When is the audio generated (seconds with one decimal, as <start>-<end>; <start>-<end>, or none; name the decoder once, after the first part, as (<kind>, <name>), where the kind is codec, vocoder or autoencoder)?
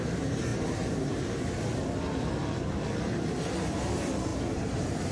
0.0-0.5 (vocoder, BigVGAN v2); 3.6-5.1